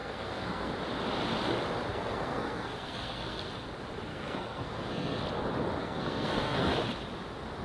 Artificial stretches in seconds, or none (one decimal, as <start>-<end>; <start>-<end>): 0.0-0.7; 1.9-3.5; 4.1-5.2; 5.8-6.7